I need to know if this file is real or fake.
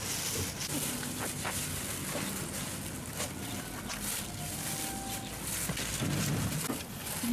real